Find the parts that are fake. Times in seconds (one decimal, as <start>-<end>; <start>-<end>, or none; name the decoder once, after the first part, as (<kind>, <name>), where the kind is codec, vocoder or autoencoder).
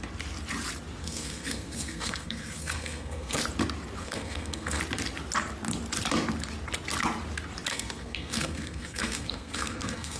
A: 1.0-3.4 (codec, SNAC); 4.0-4.8; 7.7-10.2